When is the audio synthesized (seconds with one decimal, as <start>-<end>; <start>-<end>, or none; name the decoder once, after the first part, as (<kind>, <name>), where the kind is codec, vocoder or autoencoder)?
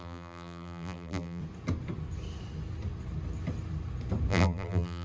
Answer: 0.0-1.4 (vocoder, BigVGAN v2); 4.3-5.0